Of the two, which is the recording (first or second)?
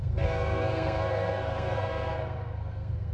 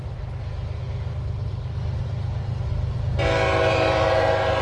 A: second